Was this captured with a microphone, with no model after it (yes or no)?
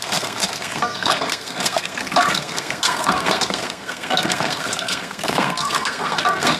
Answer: no